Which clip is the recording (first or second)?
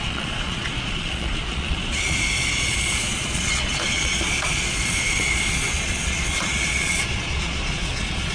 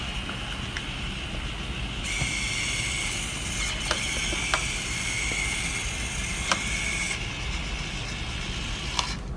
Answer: second